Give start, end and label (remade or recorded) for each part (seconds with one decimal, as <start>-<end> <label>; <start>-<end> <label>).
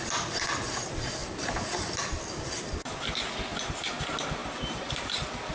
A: 0.0-1.2 recorded; 1.2-3.0 remade; 3.0-4.4 recorded; 4.4-5.5 remade